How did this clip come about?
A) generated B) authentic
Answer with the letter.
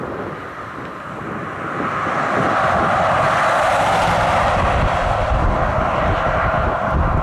B